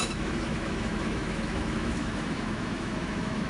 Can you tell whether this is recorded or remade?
remade